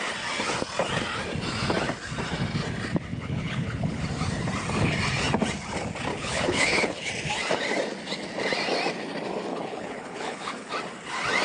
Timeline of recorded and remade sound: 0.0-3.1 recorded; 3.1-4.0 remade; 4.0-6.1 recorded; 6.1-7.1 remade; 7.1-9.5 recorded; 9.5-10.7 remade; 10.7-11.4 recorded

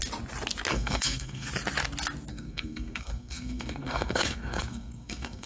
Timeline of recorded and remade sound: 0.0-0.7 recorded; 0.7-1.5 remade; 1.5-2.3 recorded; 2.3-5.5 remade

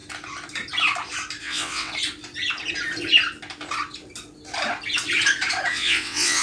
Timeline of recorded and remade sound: 0.0-1.4 recorded; 1.4-1.9 remade; 1.9-5.7 recorded; 5.7-6.4 remade

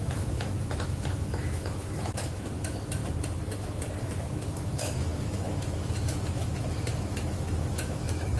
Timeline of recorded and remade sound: 0.0-3.0 remade; 3.0-4.0 recorded; 4.0-8.4 remade

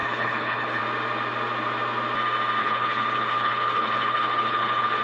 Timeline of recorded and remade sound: 0.0-0.8 remade; 0.8-2.6 recorded; 2.6-5.0 remade